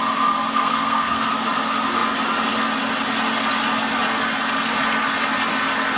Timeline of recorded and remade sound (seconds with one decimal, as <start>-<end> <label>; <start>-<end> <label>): 0.0-0.5 recorded; 0.5-1.3 remade; 1.3-6.0 recorded